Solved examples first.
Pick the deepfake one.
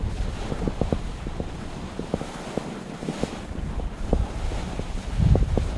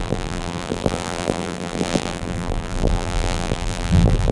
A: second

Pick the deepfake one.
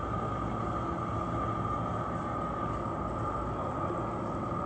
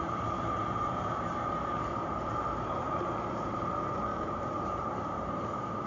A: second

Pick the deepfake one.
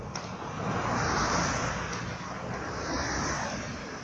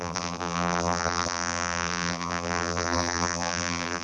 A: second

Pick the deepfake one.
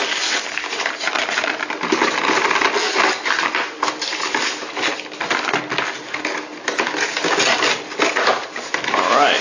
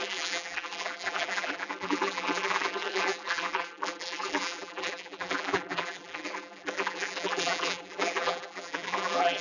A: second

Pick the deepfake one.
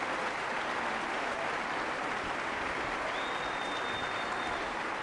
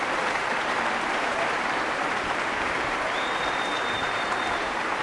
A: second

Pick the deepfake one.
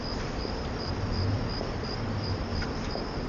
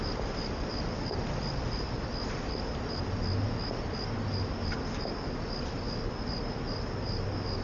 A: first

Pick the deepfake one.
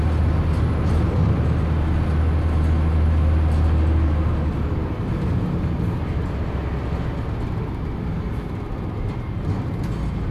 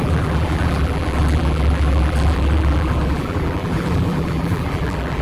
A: second